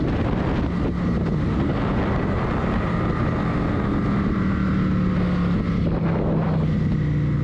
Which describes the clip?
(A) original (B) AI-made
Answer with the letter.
A